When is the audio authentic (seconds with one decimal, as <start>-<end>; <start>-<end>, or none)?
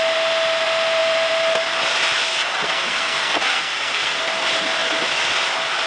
0.0-2.3; 4.2-5.9